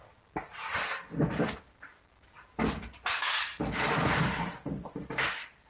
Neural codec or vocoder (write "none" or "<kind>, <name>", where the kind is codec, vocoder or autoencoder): none